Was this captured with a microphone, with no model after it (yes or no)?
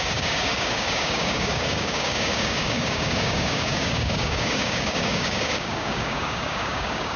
no